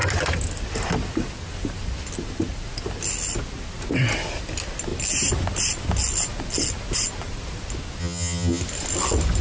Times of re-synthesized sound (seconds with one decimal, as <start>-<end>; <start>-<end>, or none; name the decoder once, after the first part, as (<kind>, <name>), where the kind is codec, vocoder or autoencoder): 8.0-8.6 (vocoder, HiFi-GAN)